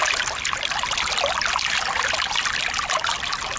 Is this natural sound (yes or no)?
yes